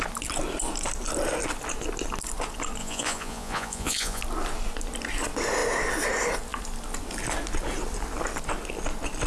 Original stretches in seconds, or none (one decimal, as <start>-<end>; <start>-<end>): 0.0-2.8; 4.2-9.3